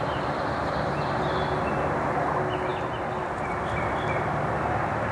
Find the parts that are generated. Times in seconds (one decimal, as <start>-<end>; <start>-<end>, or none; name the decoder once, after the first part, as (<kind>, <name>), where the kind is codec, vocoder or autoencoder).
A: none